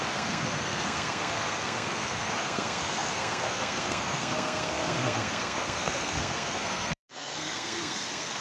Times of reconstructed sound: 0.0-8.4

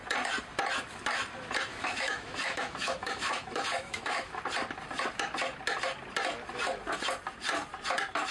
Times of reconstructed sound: 1.7-4.4

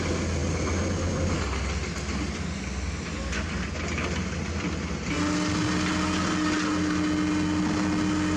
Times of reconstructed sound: none

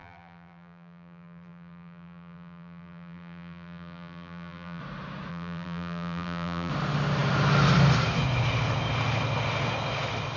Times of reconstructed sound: 0.0-4.8; 5.3-6.7

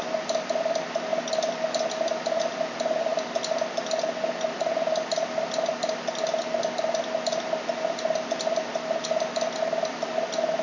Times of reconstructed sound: none

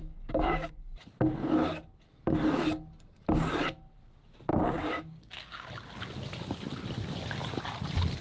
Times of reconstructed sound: 0.0-0.7; 4.5-5.7